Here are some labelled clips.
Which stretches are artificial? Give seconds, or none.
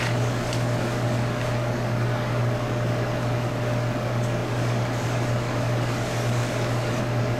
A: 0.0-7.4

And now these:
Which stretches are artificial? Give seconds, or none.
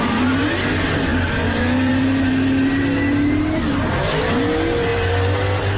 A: none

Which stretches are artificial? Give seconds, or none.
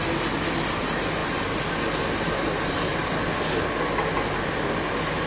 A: none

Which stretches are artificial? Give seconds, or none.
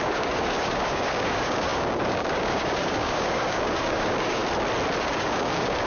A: 0.0-4.4; 5.0-5.9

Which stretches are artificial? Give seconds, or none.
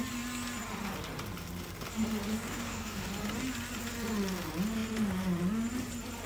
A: 2.3-3.1